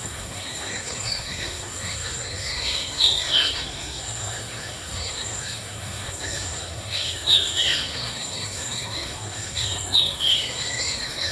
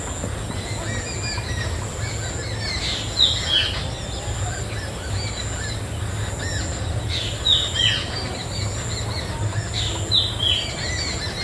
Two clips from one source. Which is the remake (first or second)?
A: first